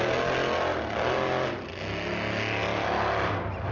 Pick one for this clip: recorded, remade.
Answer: recorded